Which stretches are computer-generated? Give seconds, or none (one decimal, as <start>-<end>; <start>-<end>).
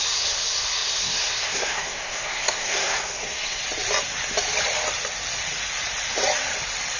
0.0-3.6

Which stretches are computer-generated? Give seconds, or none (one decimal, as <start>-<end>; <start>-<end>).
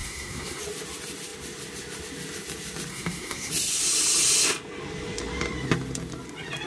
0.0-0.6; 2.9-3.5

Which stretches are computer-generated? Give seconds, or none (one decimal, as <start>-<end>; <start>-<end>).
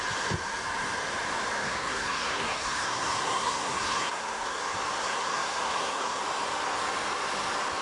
1.6-4.6; 5.0-6.2